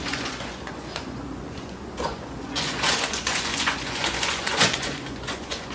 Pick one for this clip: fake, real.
fake